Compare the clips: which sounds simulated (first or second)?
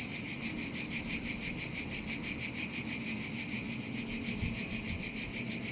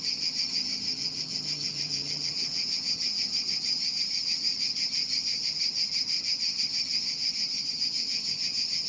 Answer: second